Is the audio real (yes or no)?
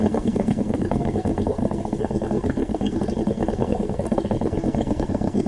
no